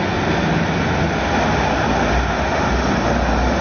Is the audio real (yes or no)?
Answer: yes